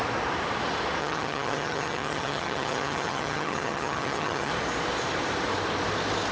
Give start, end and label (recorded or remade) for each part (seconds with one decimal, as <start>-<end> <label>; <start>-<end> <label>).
0.0-1.0 recorded; 1.0-4.5 remade; 4.5-6.3 recorded